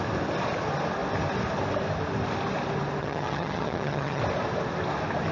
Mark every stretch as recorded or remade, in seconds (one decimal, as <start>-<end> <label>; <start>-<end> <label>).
0.0-3.0 recorded; 3.0-4.2 remade; 4.2-5.3 recorded